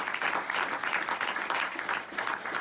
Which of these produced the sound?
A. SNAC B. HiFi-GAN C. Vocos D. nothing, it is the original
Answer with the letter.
D